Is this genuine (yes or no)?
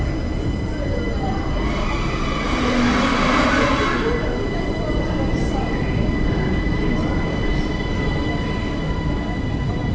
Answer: yes